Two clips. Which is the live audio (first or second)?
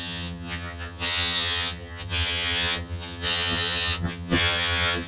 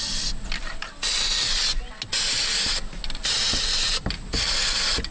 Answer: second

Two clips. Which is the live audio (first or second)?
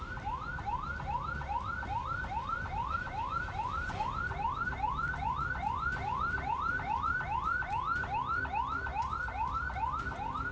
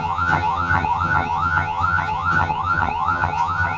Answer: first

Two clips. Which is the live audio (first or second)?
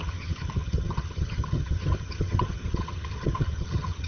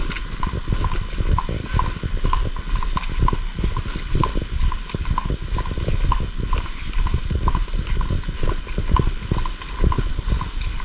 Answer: second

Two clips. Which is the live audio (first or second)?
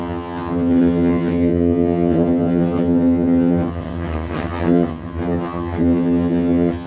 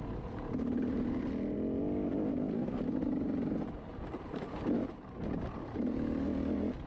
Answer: second